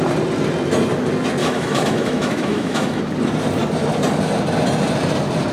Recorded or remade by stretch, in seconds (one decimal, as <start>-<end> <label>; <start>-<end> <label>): 0.0-1.4 recorded; 1.4-3.0 remade; 3.0-5.5 recorded